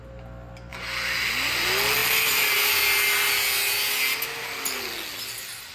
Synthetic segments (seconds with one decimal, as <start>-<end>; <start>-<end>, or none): none